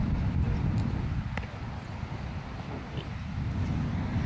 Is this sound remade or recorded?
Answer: recorded